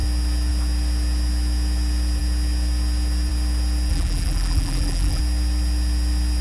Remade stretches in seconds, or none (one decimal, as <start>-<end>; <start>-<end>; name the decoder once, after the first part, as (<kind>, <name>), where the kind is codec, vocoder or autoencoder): 3.9-5.2 (vocoder, BigVGAN v2)